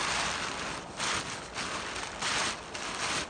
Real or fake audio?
real